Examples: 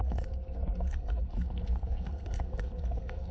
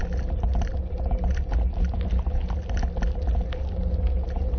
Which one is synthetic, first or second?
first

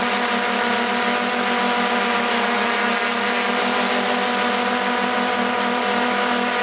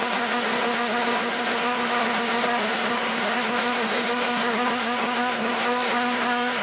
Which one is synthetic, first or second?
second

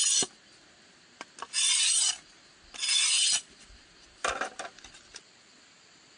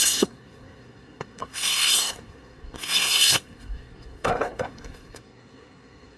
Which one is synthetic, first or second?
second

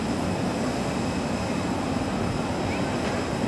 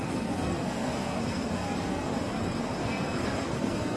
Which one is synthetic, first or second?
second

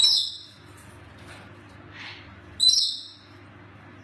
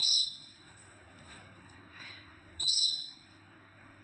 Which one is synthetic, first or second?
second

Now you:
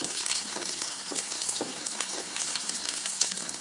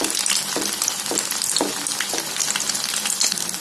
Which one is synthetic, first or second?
first